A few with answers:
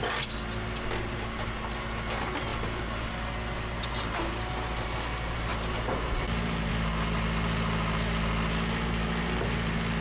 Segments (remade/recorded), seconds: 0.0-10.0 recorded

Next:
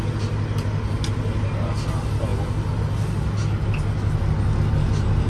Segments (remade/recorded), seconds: 0.0-5.3 recorded

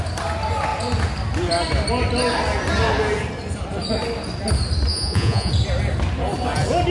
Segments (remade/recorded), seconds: 0.0-4.9 recorded; 4.9-5.5 remade; 5.5-6.9 recorded

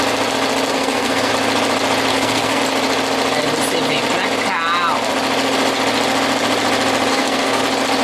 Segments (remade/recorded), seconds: 0.0-0.7 recorded; 0.7-1.3 remade; 1.3-2.1 recorded; 2.1-2.6 remade; 2.6-7.1 recorded; 7.1-7.6 remade; 7.6-8.0 recorded

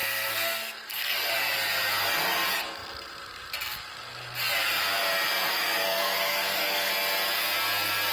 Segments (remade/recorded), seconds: 0.0-1.3 remade; 1.3-5.5 recorded; 5.5-6.9 remade; 6.9-8.1 recorded